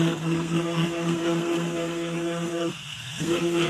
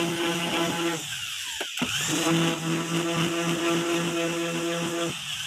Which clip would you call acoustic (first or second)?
second